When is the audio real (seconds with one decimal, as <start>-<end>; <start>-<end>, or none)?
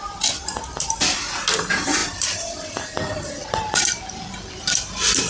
0.0-2.0